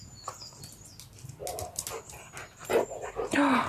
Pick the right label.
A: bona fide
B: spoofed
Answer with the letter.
A